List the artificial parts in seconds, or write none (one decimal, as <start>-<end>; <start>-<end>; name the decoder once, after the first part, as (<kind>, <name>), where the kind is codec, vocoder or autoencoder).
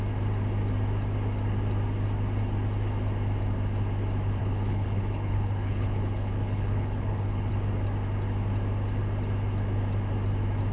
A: 4.4-7.5 (codec, HILCodec)